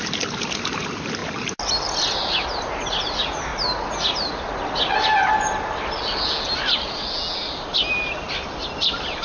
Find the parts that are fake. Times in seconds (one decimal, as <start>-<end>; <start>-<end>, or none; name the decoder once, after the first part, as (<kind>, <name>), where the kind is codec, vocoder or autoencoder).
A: 0.0-1.2 (vocoder, BigVGAN v2); 1.8-3.5; 8.2-9.2